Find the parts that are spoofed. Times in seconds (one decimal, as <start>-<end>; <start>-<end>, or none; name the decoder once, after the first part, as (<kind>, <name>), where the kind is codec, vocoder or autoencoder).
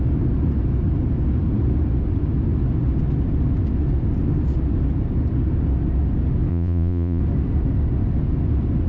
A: 6.5-7.2 (vocoder, Vocos)